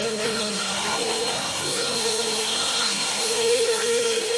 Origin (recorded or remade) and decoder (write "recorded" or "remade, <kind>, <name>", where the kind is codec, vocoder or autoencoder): remade, codec, SNAC